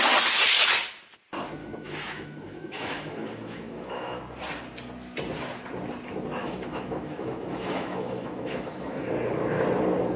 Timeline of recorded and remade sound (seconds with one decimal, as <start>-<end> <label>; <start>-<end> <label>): 0.0-1.6 recorded; 1.6-4.2 remade; 4.2-6.4 recorded; 6.4-9.1 remade; 9.1-10.2 recorded